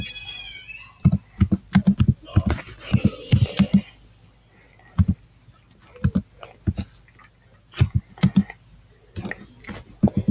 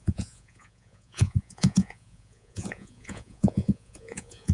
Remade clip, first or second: second